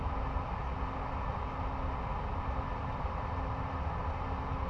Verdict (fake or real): real